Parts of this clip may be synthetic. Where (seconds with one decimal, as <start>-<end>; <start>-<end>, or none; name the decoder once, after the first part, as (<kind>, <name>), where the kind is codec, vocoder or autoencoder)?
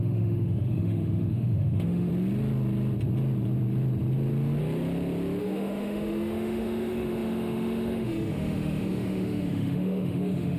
0.0-2.1 (autoencoder, DAC-VAE); 5.4-10.6